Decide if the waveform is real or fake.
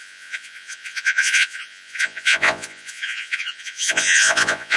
fake